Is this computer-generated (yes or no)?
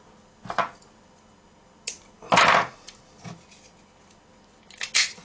no